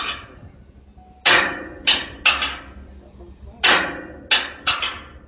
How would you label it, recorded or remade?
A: recorded